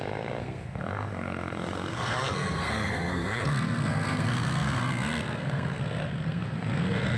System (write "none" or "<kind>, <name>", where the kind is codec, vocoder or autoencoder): codec, SNAC